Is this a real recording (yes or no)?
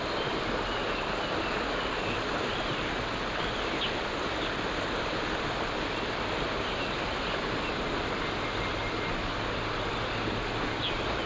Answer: yes